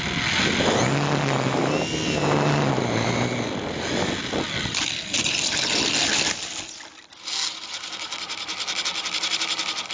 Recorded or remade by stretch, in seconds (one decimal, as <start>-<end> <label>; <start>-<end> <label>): 0.0-9.9 recorded